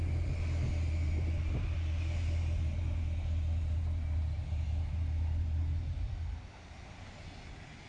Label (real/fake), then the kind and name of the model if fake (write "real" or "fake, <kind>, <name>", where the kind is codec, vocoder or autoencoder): real